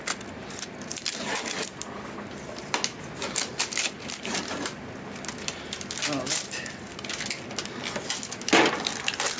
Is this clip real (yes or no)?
yes